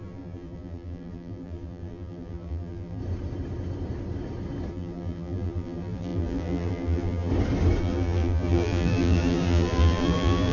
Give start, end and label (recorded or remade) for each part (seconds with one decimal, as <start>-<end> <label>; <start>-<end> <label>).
0.0-3.0 remade; 3.0-4.7 recorded; 4.7-7.3 remade; 7.3-7.8 recorded; 7.8-10.5 remade

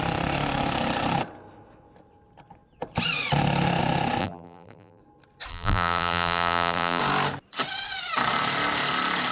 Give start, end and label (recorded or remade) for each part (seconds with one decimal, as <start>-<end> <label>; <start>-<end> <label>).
0.0-4.2 recorded; 4.2-5.0 remade; 5.0-5.5 recorded; 5.5-7.0 remade; 7.0-9.3 recorded